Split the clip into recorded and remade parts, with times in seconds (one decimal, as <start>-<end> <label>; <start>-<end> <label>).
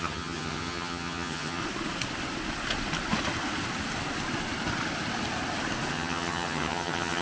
0.0-1.6 remade; 1.6-5.9 recorded; 5.9-7.2 remade